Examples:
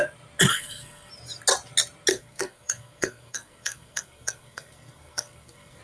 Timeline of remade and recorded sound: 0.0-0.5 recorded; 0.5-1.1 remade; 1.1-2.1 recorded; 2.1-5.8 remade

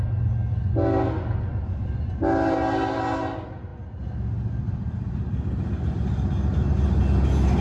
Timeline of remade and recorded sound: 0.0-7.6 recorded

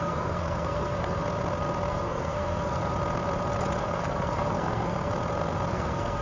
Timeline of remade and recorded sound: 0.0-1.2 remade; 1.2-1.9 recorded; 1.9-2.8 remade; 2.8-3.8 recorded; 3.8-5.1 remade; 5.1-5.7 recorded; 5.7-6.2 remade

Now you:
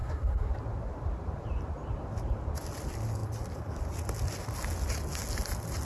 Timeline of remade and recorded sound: 0.0-0.5 remade; 0.5-5.8 recorded

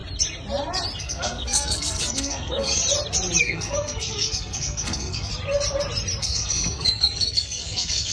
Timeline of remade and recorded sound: 0.0-1.0 recorded; 1.0-2.8 remade; 2.8-3.4 recorded; 3.4-5.3 remade; 5.3-6.2 recorded; 6.2-8.1 remade